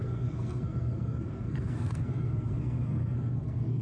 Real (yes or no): no